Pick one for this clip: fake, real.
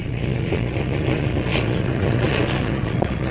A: fake